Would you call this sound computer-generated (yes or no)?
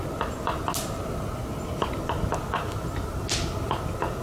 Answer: no